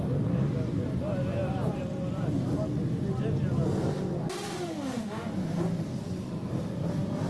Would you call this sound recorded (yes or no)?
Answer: yes